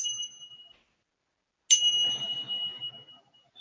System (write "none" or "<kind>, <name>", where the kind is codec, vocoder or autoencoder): none